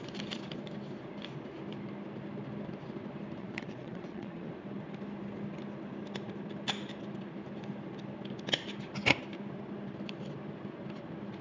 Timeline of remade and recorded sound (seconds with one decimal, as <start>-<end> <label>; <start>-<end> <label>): 0.0-3.4 recorded; 3.4-4.5 remade; 4.5-11.4 recorded